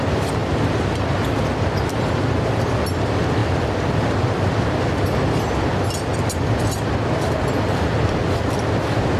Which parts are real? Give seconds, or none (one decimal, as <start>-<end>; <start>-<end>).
0.0-9.2